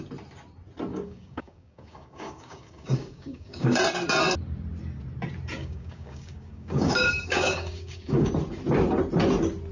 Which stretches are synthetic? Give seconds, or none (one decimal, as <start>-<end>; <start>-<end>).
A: 0.9-3.8; 5.6-8.3